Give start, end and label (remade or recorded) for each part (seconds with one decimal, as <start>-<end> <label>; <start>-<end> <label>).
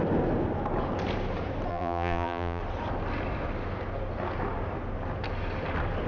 0.0-1.7 recorded; 1.7-2.6 remade; 2.6-6.1 recorded